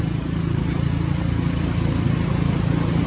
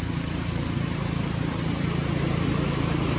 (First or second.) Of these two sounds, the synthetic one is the second